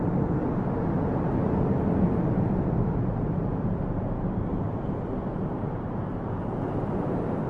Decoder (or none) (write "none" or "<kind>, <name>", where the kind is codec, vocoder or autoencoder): none